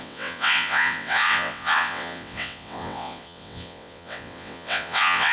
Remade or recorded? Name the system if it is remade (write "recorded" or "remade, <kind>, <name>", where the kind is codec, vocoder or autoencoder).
remade, vocoder, WaveNeXt